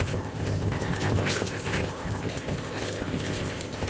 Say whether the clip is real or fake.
fake